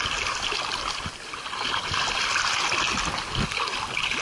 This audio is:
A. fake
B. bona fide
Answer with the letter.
B